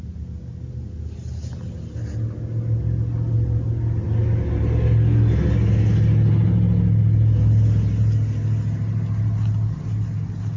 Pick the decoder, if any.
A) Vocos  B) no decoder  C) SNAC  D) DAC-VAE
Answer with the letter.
B